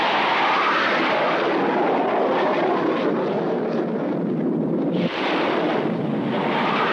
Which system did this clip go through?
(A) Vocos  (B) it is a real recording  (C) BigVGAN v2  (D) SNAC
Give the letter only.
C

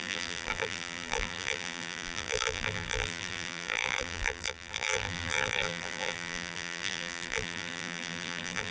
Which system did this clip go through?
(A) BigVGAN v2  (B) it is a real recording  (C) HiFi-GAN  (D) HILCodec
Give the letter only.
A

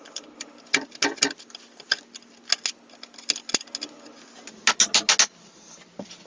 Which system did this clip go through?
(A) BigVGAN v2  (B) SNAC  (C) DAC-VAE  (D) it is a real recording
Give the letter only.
D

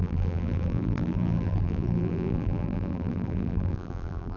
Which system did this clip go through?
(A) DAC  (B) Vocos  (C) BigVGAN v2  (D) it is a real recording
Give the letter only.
C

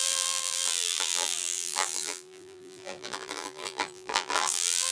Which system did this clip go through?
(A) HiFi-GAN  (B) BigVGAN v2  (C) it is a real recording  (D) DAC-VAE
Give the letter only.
B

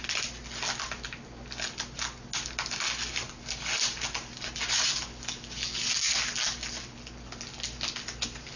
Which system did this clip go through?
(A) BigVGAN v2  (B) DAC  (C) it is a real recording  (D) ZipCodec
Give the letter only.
C